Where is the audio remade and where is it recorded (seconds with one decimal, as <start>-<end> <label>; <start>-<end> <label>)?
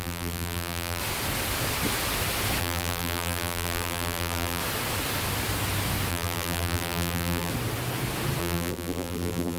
0.0-1.0 remade; 1.0-2.6 recorded; 2.6-4.6 remade; 4.6-6.1 recorded; 6.1-7.5 remade; 7.5-8.4 recorded; 8.4-9.6 remade